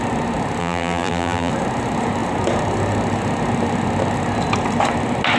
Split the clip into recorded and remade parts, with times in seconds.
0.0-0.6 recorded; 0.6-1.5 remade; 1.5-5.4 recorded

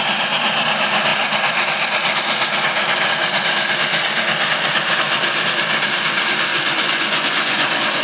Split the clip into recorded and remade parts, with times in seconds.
0.0-6.5 recorded; 6.5-8.0 remade

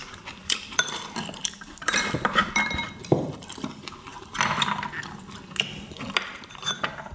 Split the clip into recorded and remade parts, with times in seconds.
0.0-1.9 remade; 1.9-2.4 recorded; 2.4-5.0 remade; 5.0-7.1 recorded

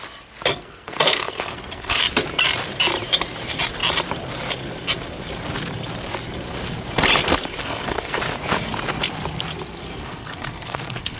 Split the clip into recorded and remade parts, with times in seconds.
0.0-0.5 recorded; 0.5-2.0 remade; 2.0-7.6 recorded; 7.6-8.2 remade; 8.2-9.8 recorded; 9.8-11.2 remade

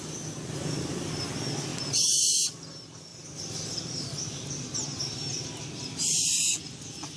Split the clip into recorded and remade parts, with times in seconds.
0.0-7.2 recorded